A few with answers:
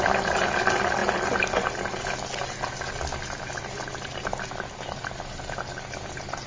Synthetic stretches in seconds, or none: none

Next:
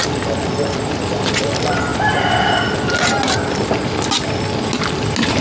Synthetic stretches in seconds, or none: none

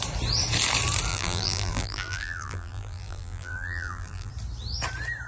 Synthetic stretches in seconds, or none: 1.1-4.3 (vocoder, BigVGAN v2)

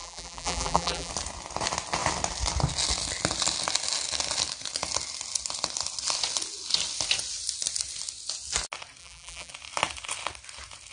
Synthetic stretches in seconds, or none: 0.0-1.1 (vocoder, BigVGAN v2); 9.0-9.5